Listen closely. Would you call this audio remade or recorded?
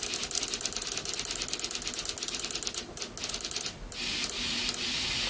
recorded